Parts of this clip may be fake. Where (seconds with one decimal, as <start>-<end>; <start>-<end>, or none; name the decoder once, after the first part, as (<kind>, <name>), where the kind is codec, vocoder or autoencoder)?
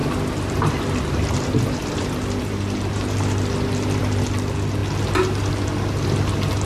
0.0-4.0 (vocoder, BigVGAN v2)